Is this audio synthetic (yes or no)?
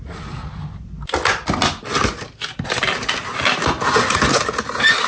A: no